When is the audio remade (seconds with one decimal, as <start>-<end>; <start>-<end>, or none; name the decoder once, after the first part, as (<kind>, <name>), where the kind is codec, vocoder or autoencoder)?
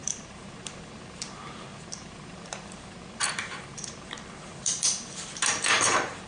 0.0-6.3 (vocoder, BigVGAN v2)